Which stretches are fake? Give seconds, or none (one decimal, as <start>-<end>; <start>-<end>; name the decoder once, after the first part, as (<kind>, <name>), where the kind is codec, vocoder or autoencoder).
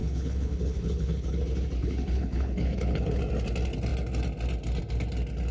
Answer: 0.0-1.4 (codec, HILCodec); 1.8-3.2